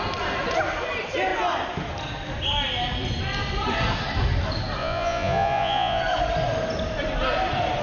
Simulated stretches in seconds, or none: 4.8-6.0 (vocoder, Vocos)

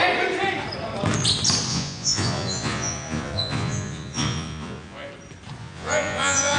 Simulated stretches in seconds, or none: 1.7-5.1 (vocoder, Vocos); 5.6-6.6